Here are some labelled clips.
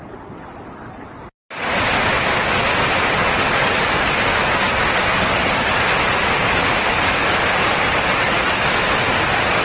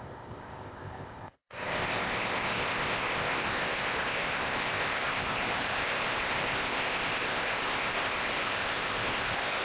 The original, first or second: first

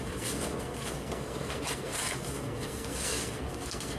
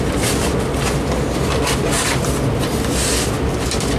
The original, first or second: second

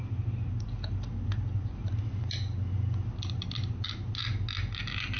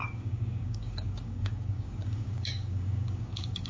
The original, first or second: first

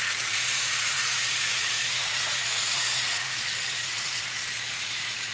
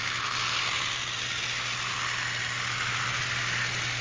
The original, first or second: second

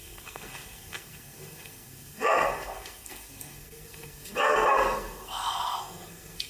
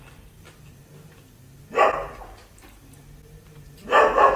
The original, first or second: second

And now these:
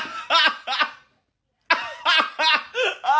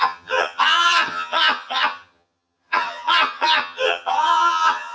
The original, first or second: first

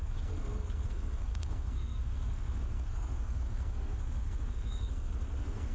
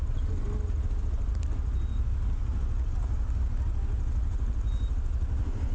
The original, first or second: second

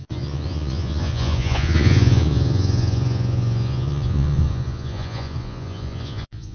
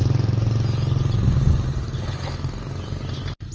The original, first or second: second